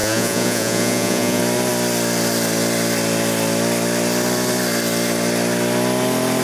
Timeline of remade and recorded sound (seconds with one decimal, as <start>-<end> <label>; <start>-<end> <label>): 0.0-1.4 remade; 1.4-6.4 recorded